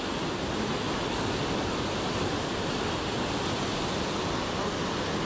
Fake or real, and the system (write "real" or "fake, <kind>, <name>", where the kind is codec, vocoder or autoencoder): real